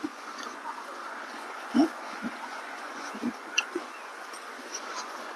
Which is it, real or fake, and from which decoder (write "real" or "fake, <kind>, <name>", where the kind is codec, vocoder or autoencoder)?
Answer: fake, vocoder, Vocos